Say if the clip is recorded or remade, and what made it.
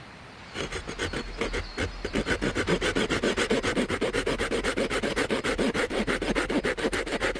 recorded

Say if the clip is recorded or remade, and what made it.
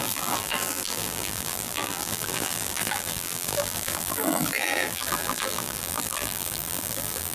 remade, vocoder, BigVGAN v2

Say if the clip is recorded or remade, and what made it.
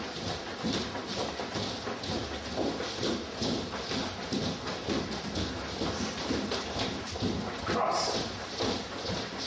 recorded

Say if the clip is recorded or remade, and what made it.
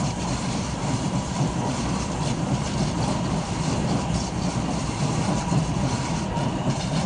remade, vocoder, BigVGAN v2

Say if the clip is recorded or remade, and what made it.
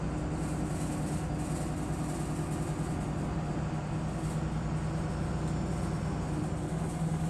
recorded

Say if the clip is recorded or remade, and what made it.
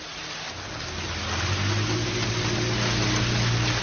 recorded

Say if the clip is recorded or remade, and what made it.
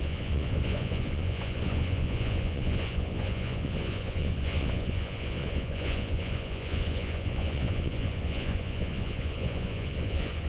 remade, vocoder, Vocos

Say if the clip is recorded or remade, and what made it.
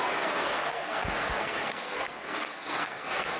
remade, codec, SNAC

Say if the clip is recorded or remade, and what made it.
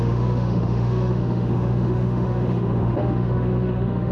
remade, autoencoder, DAC-VAE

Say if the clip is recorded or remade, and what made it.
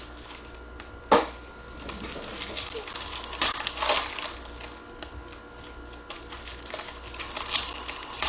recorded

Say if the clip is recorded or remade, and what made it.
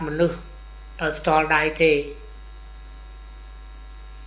recorded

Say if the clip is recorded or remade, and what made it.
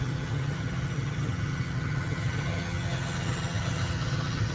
remade, vocoder, HiFi-GAN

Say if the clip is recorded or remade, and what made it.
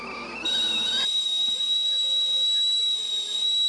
recorded